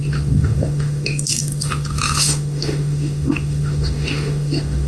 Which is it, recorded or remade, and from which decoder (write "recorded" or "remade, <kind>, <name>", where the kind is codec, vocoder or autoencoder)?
remade, autoencoder, DAC-VAE